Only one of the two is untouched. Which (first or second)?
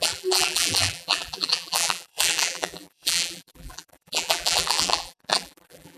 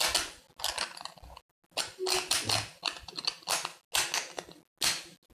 second